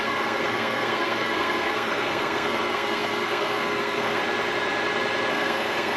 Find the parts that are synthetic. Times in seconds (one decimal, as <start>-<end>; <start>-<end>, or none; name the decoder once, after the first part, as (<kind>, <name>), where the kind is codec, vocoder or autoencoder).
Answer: 0.0-4.2 (codec, SNAC); 5.3-6.0